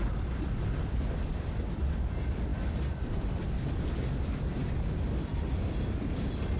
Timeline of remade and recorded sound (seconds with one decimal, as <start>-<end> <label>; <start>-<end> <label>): 0.0-6.6 recorded